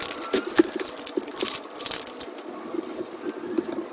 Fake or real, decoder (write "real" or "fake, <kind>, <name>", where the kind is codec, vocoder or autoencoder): real